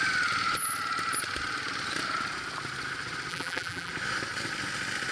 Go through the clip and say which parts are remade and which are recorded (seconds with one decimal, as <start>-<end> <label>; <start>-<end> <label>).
0.0-3.3 recorded; 3.3-3.9 remade; 3.9-5.1 recorded